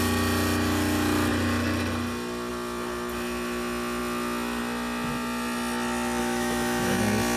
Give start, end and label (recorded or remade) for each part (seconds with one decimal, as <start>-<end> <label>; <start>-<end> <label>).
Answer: 0.0-6.2 recorded; 6.2-7.0 remade; 7.0-7.4 recorded